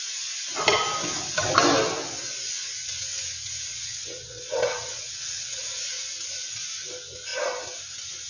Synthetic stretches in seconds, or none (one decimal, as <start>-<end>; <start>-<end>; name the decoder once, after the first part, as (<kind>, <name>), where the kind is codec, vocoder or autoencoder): 3.7-5.8 (vocoder, WaveNeXt)